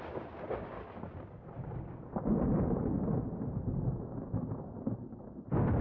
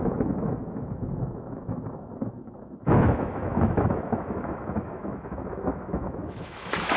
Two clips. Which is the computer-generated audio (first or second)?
second